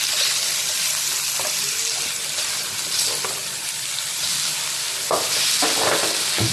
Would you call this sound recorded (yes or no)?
yes